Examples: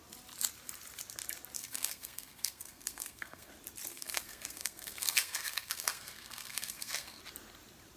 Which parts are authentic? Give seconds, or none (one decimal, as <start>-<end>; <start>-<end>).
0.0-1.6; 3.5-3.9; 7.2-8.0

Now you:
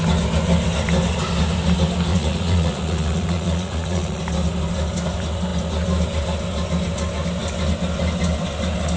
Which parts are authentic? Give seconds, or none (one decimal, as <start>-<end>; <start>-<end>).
0.0-2.1; 4.2-9.0

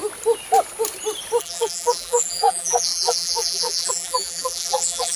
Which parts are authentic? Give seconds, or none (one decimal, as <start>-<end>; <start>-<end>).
0.0-1.4

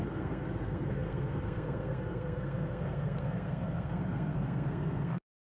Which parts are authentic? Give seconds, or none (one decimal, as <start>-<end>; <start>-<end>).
none

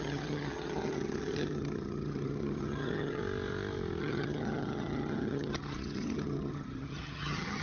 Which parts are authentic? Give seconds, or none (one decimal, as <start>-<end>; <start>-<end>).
3.2-4.0